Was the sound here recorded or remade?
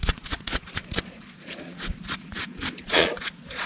remade